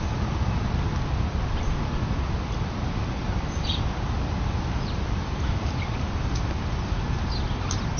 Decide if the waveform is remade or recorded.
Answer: recorded